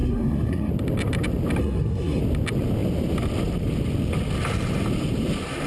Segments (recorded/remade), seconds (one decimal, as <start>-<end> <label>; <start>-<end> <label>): 0.0-0.7 remade; 0.7-1.6 recorded; 1.6-2.2 remade; 2.2-5.7 recorded